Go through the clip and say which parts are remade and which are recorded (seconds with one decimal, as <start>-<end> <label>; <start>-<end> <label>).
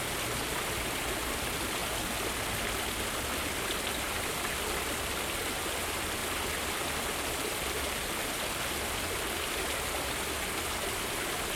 0.0-11.6 recorded